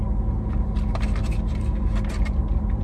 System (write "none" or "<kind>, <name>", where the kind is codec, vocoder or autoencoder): none